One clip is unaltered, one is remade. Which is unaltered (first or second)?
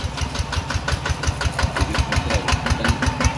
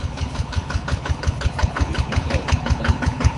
first